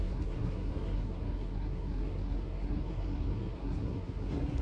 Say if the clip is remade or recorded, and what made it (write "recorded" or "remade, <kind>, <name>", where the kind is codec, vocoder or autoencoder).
remade, codec, SNAC